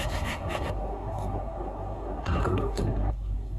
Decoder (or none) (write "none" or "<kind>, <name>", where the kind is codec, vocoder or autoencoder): codec, SNAC